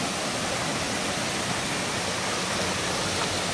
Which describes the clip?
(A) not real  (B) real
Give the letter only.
B